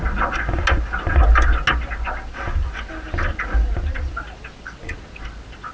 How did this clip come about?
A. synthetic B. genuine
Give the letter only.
B